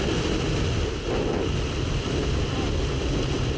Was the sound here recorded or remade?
recorded